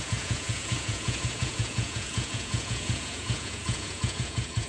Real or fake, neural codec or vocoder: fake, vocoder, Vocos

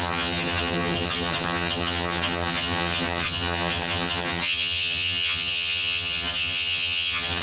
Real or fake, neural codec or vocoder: fake, vocoder, HiFi-GAN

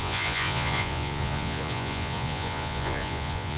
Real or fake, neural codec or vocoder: fake, vocoder, Vocos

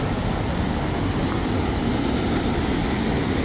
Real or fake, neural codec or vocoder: real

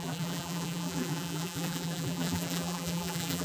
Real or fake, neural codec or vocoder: fake, vocoder, BigVGAN v2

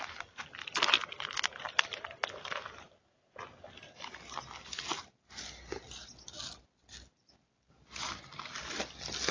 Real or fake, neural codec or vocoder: real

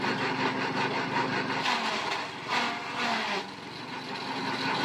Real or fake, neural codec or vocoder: real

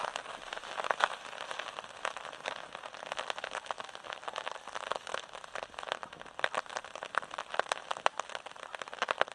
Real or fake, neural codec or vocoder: real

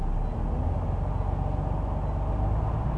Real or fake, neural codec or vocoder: real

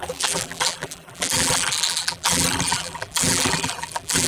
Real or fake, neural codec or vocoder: fake, vocoder, BigVGAN v2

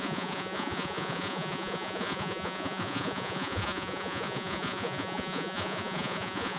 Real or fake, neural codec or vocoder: fake, vocoder, Vocos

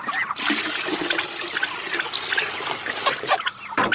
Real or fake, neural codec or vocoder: real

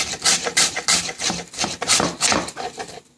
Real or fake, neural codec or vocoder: real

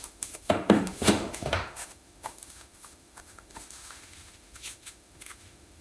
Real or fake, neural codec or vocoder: fake, autoencoder, DAC-VAE